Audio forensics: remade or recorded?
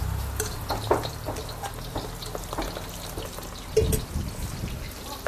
recorded